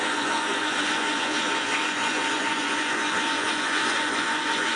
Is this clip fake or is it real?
fake